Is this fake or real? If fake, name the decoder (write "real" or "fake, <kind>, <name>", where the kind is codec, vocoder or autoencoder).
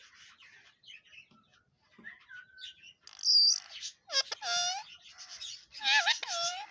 real